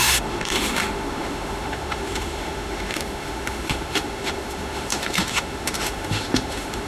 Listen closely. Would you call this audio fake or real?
fake